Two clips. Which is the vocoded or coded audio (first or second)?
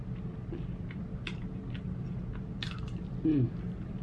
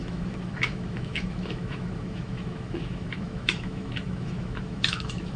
second